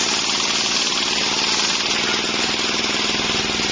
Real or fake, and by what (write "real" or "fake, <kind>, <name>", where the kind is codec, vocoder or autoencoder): real